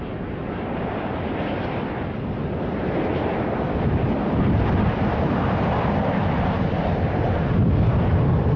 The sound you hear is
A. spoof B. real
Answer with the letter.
B